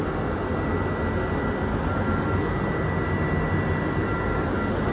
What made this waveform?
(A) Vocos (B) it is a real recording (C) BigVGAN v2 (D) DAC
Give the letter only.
B